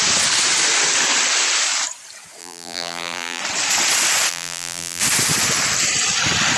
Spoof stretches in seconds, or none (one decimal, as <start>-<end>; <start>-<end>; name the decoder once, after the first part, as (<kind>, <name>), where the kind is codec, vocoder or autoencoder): 2.4-3.4 (vocoder, BigVGAN v2); 4.3-5.0